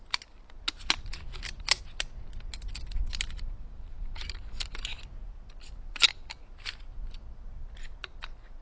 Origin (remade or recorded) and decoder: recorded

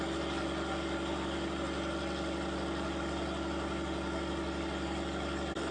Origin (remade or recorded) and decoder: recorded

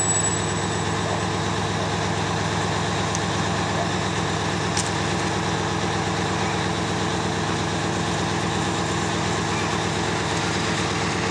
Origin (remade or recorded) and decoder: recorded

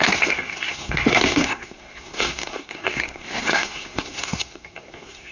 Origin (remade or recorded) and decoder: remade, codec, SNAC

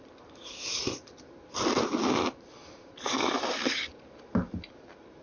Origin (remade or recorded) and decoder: recorded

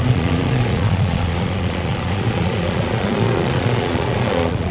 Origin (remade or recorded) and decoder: remade, vocoder, Vocos